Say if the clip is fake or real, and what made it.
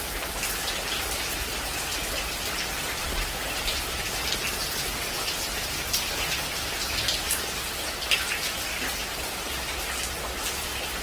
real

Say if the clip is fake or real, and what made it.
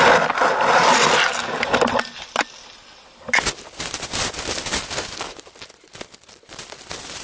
real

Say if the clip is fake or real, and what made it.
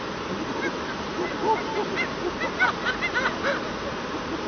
real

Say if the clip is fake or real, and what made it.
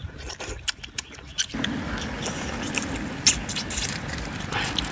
real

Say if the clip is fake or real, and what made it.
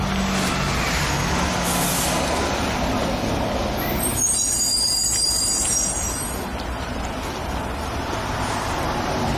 real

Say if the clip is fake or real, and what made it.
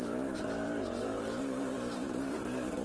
fake, vocoder, BigVGAN v2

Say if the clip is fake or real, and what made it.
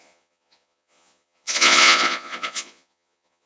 fake, vocoder, Vocos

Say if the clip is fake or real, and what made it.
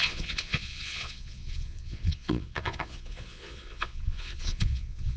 fake, vocoder, Vocos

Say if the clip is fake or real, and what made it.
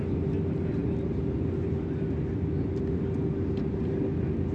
real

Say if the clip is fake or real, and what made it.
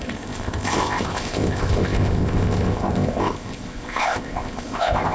fake, codec, ZipCodec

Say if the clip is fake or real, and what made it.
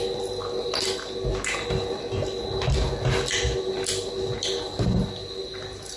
real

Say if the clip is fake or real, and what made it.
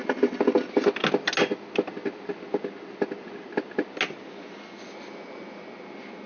real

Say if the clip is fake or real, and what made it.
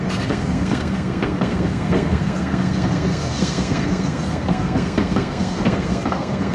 fake, codec, SNAC